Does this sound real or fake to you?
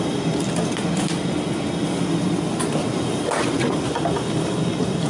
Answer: real